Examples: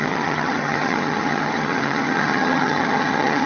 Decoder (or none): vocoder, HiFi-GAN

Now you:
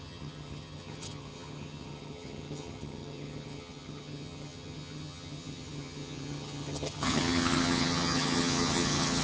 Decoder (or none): vocoder, HiFi-GAN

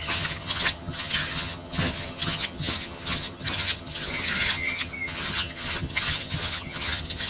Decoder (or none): vocoder, HiFi-GAN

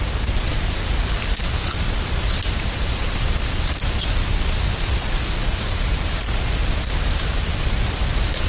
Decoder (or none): none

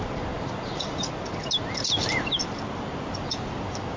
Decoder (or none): none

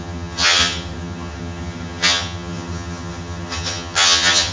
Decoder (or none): vocoder, HiFi-GAN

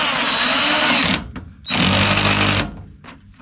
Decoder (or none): none